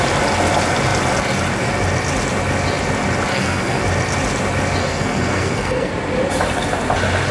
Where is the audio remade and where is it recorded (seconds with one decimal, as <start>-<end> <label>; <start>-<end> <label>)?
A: 0.0-3.3 recorded; 3.3-3.8 remade; 3.8-4.8 recorded; 4.8-5.9 remade; 5.9-7.3 recorded